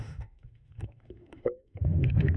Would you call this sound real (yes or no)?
no